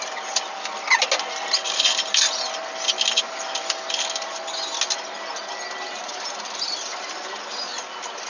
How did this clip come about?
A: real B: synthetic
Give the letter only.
A